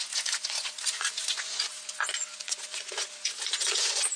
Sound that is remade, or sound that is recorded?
remade